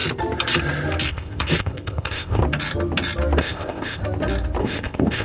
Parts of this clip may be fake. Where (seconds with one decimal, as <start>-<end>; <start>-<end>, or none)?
1.1-2.4; 3.4-4.0; 4.6-5.2